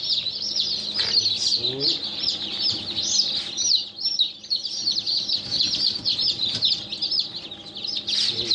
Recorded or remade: recorded